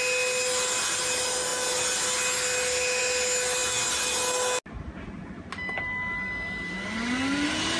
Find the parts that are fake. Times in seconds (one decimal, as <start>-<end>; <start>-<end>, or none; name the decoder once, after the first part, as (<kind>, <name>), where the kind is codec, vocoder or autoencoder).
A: none